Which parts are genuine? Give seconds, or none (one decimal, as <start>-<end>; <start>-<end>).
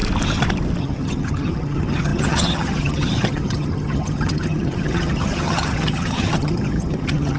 0.0-0.8